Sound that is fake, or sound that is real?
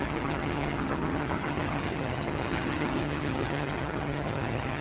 fake